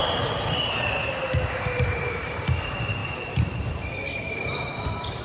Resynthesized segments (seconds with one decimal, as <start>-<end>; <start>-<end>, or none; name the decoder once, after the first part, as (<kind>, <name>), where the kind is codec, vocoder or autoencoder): 1.8-5.2 (vocoder, BigVGAN v2)